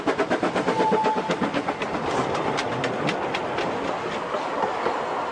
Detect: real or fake real